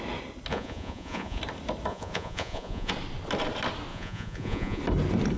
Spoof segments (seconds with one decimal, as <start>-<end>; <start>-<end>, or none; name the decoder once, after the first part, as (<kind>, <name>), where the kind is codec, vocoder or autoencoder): 0.5-1.4 (vocoder, Vocos); 1.9-2.9; 3.9-4.8